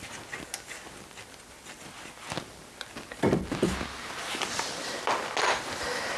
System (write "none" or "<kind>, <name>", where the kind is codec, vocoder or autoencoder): none